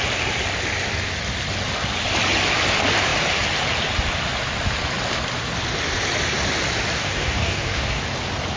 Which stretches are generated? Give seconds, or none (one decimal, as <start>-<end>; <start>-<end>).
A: 7.0-8.0